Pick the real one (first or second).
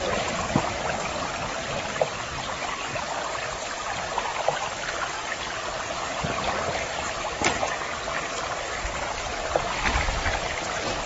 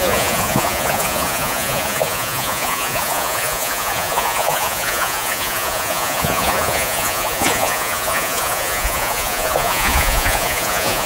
first